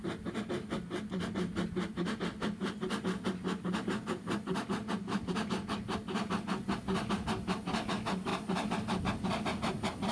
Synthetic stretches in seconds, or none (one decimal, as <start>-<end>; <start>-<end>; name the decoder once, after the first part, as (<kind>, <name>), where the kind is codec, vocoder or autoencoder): none